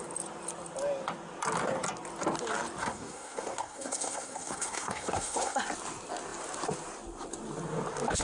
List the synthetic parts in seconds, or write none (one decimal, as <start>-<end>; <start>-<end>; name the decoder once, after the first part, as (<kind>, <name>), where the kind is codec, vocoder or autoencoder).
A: 2.8-5.6 (codec, SNAC)

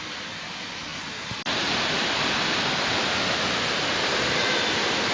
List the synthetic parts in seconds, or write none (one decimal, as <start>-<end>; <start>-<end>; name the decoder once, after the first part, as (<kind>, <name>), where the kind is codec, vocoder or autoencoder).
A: none

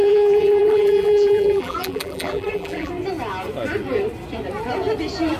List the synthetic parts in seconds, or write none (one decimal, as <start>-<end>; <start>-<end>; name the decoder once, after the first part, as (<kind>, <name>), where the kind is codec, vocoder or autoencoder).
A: 0.0-2.9 (vocoder, BigVGAN v2)

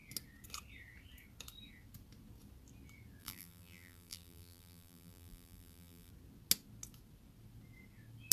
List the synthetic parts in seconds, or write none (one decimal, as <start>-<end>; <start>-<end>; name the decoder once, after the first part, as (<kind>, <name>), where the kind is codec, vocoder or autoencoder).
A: 3.2-6.1 (vocoder, BigVGAN v2)

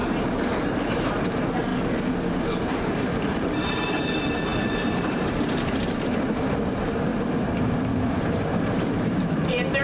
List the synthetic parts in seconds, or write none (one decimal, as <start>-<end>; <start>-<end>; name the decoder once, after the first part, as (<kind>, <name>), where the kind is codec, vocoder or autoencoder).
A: 0.7-1.7 (vocoder, BigVGAN v2); 2.4-9.8